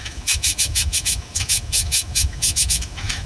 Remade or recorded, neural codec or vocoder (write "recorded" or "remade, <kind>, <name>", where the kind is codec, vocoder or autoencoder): remade, autoencoder, DAC-VAE